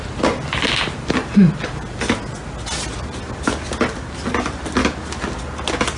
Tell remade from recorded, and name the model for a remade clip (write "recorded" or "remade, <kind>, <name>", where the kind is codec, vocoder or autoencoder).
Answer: recorded